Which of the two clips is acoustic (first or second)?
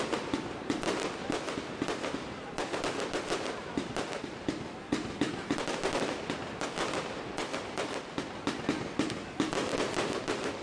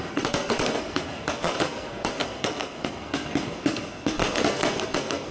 first